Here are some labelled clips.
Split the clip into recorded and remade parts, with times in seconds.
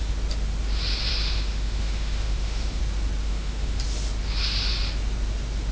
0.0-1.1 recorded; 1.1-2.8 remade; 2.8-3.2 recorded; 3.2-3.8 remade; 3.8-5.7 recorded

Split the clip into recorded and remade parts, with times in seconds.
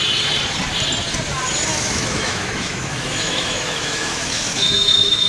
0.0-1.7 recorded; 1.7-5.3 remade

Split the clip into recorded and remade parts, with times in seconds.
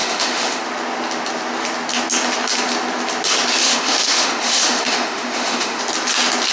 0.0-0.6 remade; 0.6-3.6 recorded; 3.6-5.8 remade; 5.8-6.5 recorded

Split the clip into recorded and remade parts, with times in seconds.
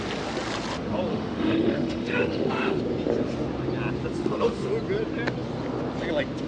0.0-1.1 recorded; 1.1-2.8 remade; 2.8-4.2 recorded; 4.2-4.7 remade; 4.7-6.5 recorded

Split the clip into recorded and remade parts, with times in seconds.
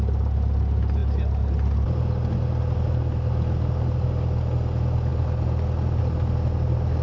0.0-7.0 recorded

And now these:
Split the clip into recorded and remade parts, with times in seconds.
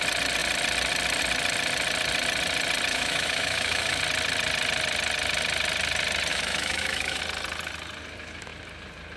0.0-2.9 recorded; 2.9-4.0 remade; 4.0-6.3 recorded; 6.3-7.2 remade; 7.2-9.2 recorded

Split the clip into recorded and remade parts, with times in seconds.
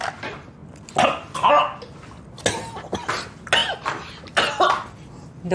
0.0-5.5 recorded